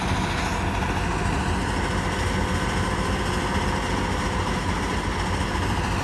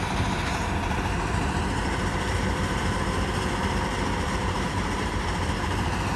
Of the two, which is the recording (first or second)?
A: first